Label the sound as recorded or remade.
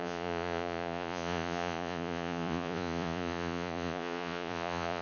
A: remade